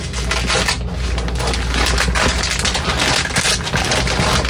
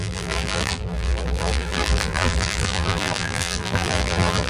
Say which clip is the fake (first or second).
second